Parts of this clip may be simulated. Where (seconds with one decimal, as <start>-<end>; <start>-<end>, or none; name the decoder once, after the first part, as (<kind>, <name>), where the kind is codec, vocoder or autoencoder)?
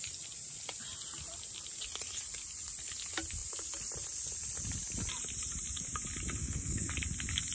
6.4-6.9 (codec, SNAC)